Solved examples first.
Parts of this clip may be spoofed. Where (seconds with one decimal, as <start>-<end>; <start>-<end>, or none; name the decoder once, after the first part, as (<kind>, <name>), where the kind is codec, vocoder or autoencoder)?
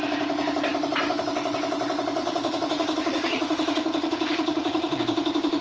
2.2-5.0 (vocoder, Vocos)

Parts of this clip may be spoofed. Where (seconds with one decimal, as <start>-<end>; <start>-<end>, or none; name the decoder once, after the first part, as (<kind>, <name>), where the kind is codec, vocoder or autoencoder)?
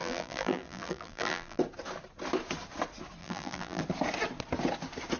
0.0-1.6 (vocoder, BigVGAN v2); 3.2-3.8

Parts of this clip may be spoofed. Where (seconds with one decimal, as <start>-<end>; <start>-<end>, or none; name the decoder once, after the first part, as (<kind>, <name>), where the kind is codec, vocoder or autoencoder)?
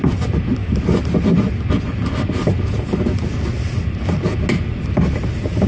none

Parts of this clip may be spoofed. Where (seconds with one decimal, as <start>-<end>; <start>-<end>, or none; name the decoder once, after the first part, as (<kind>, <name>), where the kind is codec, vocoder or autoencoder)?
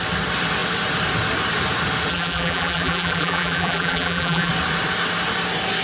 2.1-4.5 (vocoder, BigVGAN v2)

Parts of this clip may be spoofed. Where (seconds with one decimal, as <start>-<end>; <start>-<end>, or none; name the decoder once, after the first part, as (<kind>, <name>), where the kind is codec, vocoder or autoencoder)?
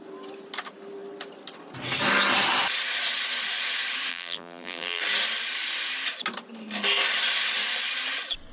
4.1-5.0 (vocoder, BigVGAN v2)